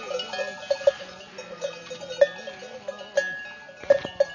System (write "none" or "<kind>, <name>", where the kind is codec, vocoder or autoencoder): none